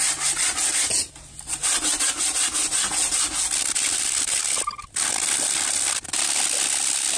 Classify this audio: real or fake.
real